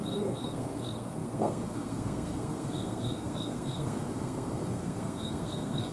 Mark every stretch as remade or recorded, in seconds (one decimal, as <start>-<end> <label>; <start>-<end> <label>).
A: 0.0-5.9 remade